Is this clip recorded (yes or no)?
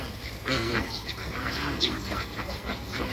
no